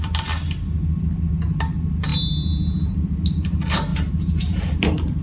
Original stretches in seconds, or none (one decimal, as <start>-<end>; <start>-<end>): 0.0-3.9